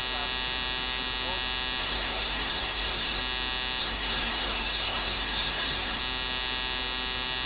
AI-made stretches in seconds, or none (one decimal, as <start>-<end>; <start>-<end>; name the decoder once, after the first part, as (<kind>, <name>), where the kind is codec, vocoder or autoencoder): 1.8-3.2 (codec, SNAC); 3.8-6.0